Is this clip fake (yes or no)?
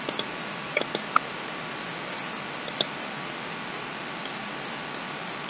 no